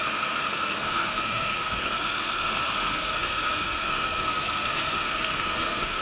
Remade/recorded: remade